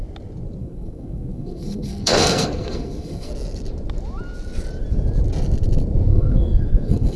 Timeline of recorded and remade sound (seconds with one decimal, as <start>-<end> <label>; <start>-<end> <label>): 0.0-0.6 recorded; 0.6-3.3 remade; 3.3-6.1 recorded; 6.1-7.2 remade